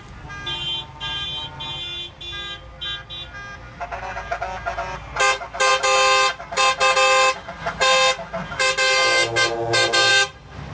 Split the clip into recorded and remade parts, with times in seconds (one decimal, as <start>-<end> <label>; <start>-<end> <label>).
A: 0.0-10.7 recorded